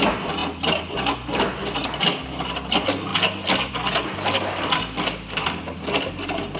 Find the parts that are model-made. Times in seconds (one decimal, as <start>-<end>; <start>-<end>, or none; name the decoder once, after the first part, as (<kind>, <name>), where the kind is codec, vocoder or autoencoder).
none